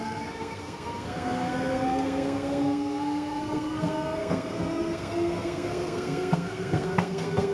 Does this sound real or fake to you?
fake